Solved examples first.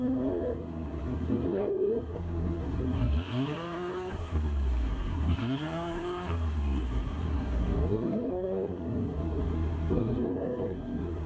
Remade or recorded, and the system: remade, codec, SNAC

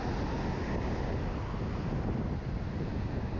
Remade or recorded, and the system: recorded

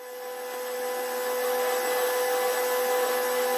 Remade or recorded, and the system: recorded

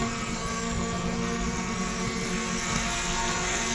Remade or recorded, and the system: remade, codec, SNAC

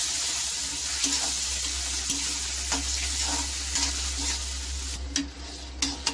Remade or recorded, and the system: recorded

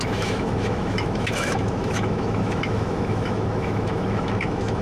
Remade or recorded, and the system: remade, autoencoder, DAC-VAE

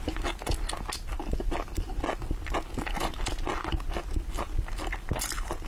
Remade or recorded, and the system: recorded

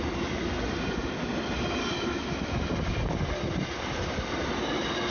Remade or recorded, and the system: recorded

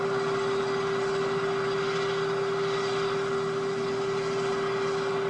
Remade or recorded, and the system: recorded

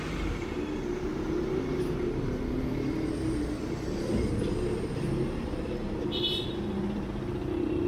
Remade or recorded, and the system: recorded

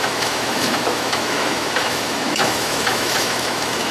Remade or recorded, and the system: remade, autoencoder, DAC-VAE